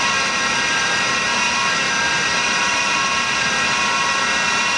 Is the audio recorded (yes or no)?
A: yes